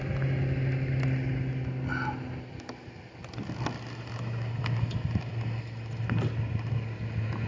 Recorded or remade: recorded